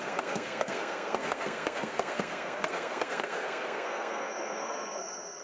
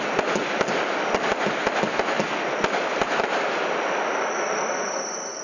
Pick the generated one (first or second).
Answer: first